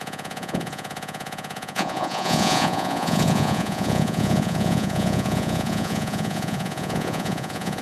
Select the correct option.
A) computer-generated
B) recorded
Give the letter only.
A